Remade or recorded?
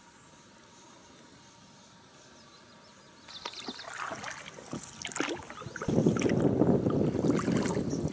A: recorded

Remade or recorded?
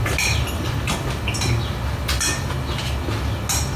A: recorded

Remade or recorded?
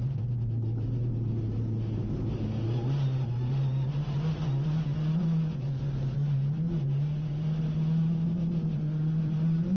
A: recorded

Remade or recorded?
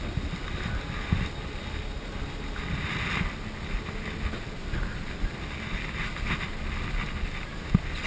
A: recorded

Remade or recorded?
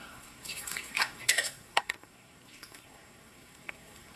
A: remade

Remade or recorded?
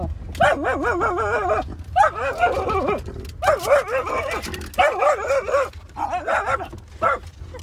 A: recorded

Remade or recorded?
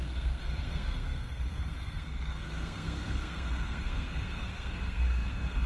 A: remade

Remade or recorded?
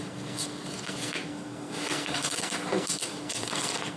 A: remade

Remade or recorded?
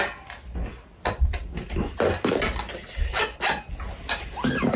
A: recorded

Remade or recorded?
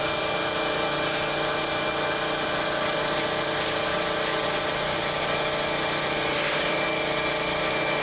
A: recorded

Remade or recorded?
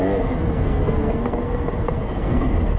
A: remade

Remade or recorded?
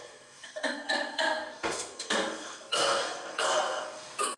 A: remade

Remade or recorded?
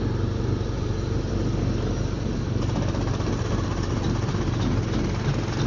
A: recorded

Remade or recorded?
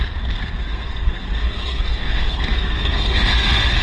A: remade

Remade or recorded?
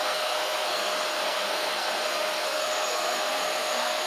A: remade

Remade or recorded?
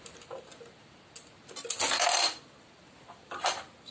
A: recorded